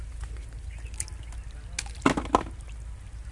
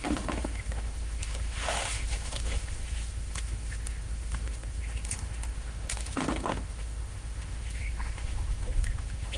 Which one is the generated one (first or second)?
second